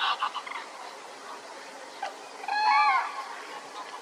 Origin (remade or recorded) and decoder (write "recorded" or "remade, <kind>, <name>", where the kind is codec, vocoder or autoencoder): remade, vocoder, BigVGAN v2